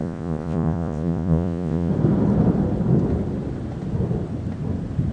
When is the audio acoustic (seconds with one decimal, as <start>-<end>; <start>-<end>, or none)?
1.9-5.1